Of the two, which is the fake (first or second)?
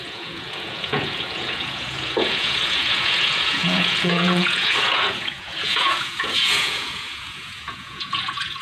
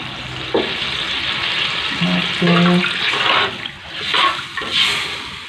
first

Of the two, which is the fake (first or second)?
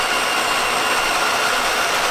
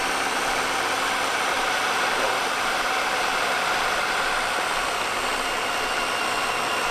second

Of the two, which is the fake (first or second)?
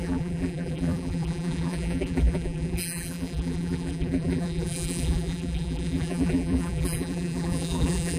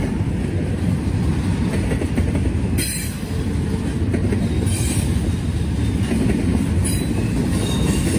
first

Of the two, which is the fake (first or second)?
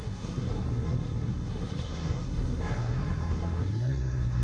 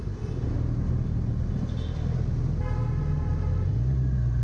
first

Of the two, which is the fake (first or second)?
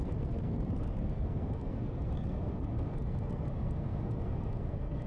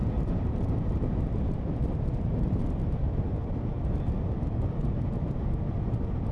first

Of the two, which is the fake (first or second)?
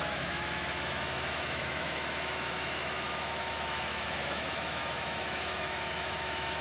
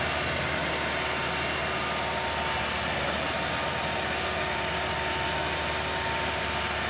first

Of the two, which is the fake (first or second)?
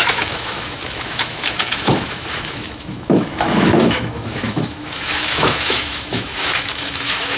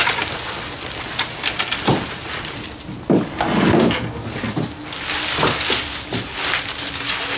first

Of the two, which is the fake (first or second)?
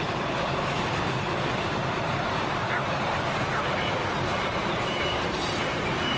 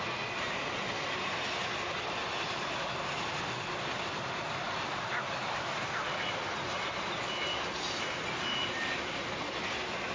first